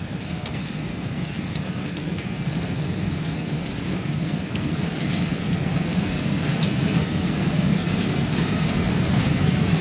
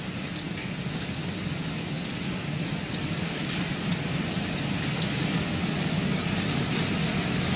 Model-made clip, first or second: first